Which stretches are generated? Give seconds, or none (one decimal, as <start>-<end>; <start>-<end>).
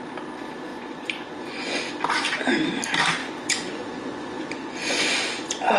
0.7-1.9; 3.2-5.8